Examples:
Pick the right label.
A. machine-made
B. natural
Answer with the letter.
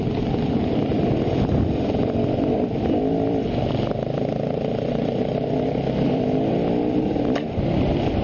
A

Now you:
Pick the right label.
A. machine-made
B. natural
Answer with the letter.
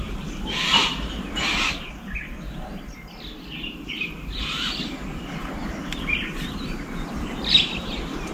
A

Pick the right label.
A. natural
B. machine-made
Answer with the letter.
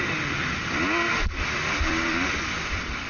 A